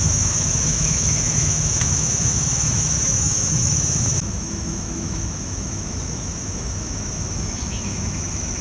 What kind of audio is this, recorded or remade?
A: remade